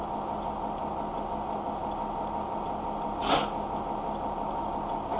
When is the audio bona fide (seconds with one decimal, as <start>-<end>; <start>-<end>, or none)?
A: 0.0-5.2